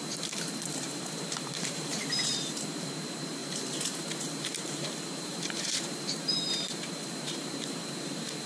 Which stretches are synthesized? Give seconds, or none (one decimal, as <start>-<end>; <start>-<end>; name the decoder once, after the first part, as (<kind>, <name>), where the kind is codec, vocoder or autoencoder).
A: 0.0-3.4 (vocoder, BigVGAN v2); 3.9-8.5

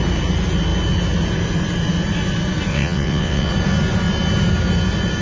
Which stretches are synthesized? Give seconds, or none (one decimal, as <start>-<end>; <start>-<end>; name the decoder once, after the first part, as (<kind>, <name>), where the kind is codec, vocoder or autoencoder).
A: 2.7-3.5 (vocoder, WaveNeXt)

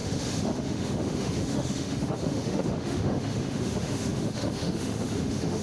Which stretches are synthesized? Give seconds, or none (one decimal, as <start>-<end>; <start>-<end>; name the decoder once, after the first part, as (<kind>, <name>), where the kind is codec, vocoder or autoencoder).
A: 0.0-5.6 (autoencoder, DAC-VAE)

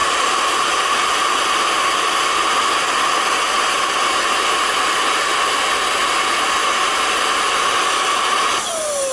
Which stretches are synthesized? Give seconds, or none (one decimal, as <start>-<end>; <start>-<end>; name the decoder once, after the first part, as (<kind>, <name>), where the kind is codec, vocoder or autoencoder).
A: 6.6-7.1 (vocoder, BigVGAN v2)

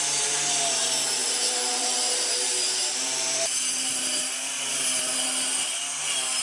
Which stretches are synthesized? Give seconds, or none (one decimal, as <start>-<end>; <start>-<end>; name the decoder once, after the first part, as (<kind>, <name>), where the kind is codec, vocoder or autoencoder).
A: 1.2-5.0 (vocoder, BigVGAN v2)